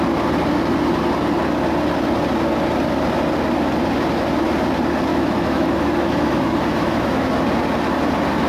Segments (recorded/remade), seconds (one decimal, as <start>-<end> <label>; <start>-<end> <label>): 0.0-5.1 recorded; 5.1-7.3 remade; 7.3-8.5 recorded